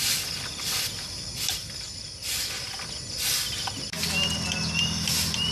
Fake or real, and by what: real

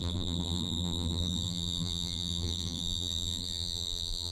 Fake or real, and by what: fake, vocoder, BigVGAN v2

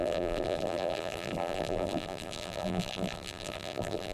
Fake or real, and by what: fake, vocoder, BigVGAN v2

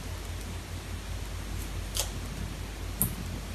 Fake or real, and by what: real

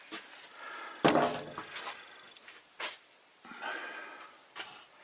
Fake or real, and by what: real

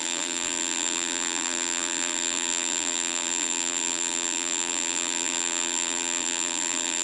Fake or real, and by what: fake, vocoder, BigVGAN v2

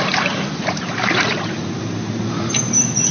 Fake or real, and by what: fake, vocoder, BigVGAN v2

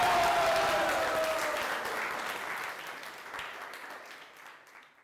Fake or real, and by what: real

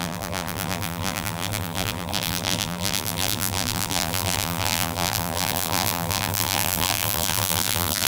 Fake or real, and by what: fake, vocoder, BigVGAN v2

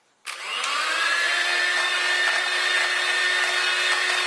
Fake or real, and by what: real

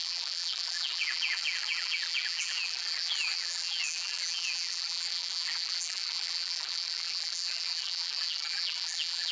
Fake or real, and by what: fake, vocoder, BigVGAN v2